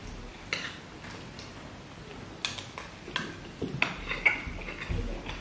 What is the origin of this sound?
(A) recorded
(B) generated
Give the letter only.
A